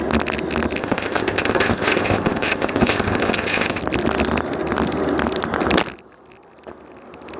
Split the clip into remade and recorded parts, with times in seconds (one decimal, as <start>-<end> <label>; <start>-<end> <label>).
0.0-0.8 recorded; 0.8-3.8 remade; 3.8-7.4 recorded

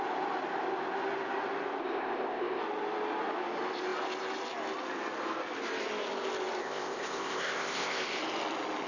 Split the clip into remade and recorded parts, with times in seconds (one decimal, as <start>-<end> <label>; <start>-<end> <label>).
0.0-1.8 recorded; 1.8-2.6 remade; 2.6-6.6 recorded; 6.6-8.2 remade; 8.2-8.9 recorded